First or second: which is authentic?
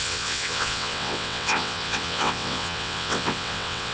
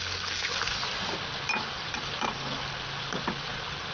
second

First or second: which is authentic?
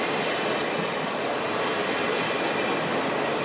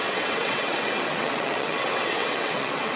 first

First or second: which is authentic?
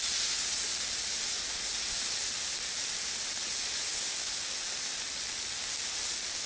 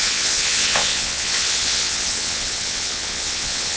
first